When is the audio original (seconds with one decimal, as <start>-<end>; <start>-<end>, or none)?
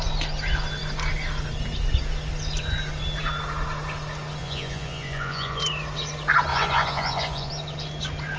0.0-4.4; 5.6-6.5; 7.5-8.4